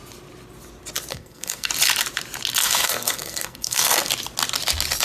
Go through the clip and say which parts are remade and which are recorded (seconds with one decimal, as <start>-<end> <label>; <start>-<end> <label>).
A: 0.0-1.1 recorded; 1.1-1.7 remade; 1.7-2.6 recorded; 2.6-4.1 remade; 4.1-5.0 recorded